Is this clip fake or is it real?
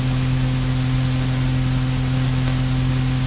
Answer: real